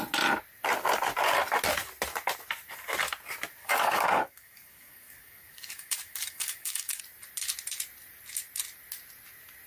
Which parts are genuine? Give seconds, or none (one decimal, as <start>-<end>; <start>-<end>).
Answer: 0.0-3.6; 7.0-9.7

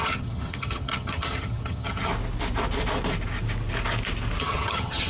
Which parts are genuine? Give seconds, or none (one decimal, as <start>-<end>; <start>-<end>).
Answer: 2.1-4.4

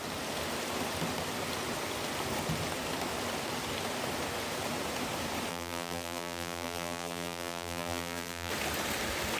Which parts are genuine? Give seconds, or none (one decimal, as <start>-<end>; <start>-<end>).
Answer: 0.0-5.5; 8.5-9.4